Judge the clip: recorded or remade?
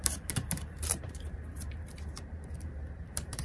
remade